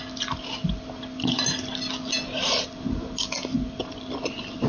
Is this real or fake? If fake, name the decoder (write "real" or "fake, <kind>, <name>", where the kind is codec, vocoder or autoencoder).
real